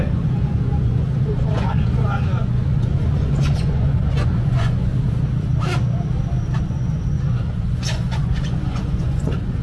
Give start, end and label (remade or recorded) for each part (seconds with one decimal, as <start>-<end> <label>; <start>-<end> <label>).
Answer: 0.0-4.9 remade; 4.9-6.7 recorded; 6.7-9.6 remade